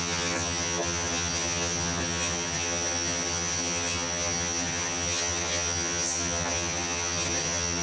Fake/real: fake